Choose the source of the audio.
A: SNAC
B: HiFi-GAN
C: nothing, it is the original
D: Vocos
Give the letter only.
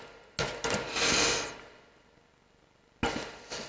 C